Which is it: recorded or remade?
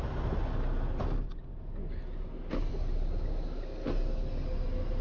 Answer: recorded